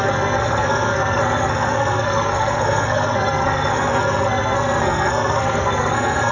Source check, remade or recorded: remade